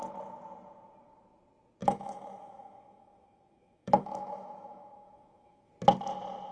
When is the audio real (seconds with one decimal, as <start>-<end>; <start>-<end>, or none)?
0.0-1.8; 5.7-6.5